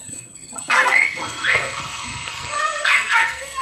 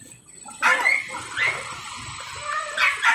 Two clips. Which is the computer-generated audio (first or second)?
first